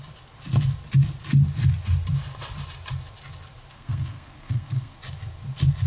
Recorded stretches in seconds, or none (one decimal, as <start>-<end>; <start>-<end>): 0.0-3.7; 5.0-5.9